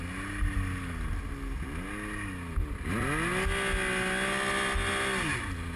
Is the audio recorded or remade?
recorded